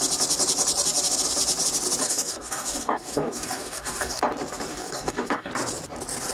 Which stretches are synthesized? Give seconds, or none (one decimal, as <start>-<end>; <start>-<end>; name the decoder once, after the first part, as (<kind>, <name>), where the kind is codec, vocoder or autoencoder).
2.0-4.2 (codec, DAC); 4.7-5.5